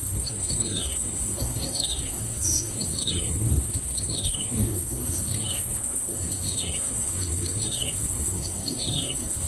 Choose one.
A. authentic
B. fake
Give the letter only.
B